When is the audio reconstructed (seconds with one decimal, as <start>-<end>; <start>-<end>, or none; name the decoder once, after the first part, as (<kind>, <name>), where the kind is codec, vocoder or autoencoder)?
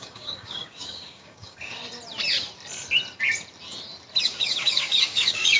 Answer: 0.0-1.8 (codec, DAC); 4.2-5.6